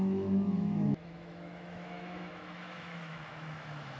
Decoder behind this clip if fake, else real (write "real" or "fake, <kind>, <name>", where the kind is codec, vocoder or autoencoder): fake, autoencoder, DAC-VAE